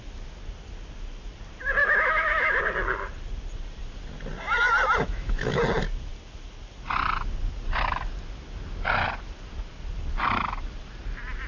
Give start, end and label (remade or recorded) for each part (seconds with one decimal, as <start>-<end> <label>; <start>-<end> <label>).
0.0-1.8 recorded; 1.8-2.6 remade; 2.6-5.0 recorded; 5.0-5.6 remade; 5.6-11.5 recorded